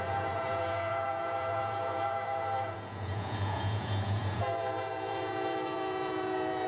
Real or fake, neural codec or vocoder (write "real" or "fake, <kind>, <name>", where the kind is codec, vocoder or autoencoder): fake, vocoder, Vocos